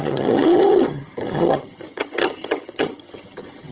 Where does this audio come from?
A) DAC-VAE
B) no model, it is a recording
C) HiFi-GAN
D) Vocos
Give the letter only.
C